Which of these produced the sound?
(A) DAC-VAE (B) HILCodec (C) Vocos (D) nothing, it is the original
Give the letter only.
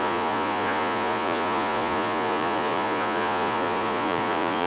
C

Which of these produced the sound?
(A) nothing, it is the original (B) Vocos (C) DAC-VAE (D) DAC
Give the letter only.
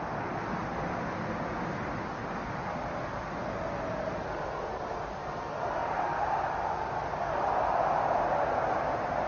A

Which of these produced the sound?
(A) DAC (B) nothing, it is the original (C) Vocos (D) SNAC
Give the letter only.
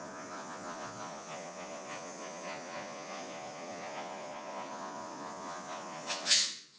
C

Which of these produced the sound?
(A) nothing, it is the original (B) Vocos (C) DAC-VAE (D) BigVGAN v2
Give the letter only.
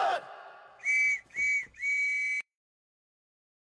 C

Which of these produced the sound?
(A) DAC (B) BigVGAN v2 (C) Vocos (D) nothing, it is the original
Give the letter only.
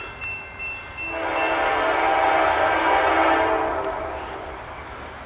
D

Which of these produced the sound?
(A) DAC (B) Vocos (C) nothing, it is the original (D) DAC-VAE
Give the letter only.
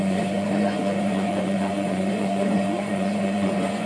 B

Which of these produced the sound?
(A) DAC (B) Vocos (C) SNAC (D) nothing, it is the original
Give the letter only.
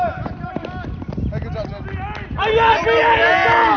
D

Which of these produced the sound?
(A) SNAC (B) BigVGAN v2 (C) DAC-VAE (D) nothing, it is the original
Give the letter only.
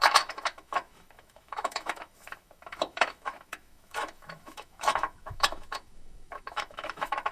C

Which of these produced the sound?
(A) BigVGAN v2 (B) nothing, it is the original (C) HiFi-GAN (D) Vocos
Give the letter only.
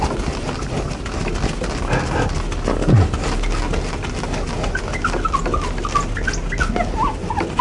B